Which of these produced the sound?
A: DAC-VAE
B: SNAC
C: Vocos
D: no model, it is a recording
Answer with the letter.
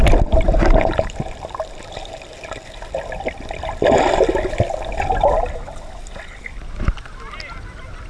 D